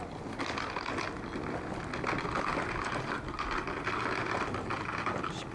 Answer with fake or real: real